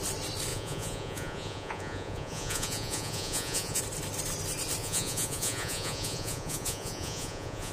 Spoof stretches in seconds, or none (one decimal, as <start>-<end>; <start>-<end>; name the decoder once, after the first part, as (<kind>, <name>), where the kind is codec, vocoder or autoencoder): 0.5-3.8 (vocoder, Vocos); 4.8-7.7